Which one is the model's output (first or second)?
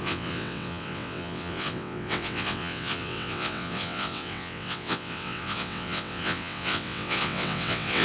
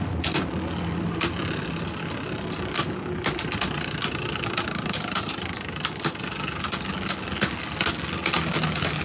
first